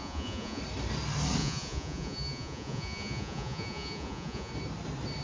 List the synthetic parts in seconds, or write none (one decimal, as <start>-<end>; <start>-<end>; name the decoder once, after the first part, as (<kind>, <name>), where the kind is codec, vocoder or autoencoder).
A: 0.0-0.6 (vocoder, Vocos); 1.4-4.5